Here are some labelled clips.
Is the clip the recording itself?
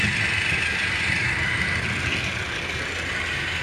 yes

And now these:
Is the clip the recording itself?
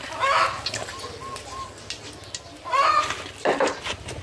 yes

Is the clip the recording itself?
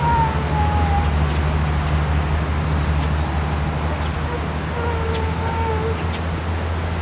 yes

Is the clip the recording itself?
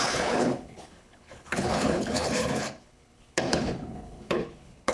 no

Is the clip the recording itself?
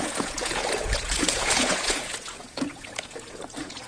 no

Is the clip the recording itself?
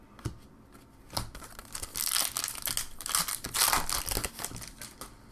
yes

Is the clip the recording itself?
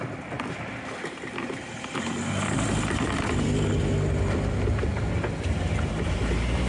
yes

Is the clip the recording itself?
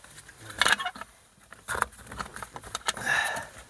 yes